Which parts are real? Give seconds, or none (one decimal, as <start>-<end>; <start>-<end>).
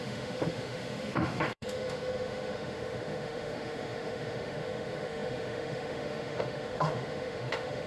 none